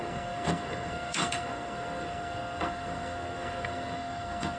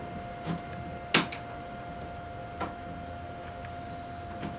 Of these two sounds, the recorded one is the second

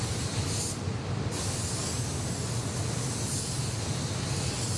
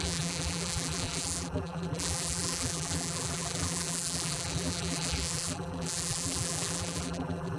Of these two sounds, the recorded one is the first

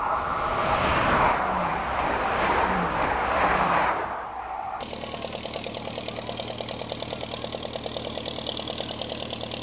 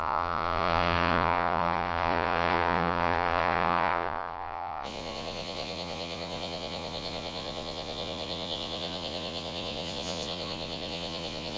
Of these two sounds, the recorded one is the first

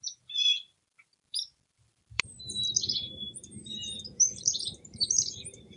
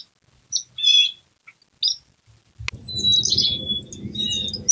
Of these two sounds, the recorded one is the second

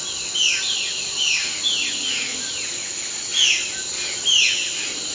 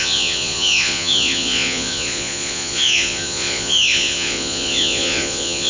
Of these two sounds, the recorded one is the first